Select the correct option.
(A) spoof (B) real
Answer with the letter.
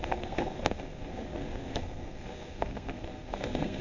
A